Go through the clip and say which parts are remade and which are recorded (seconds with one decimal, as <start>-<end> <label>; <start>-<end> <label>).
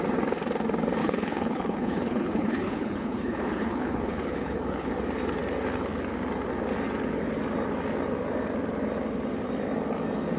0.0-1.0 recorded; 1.0-4.9 remade; 4.9-10.4 recorded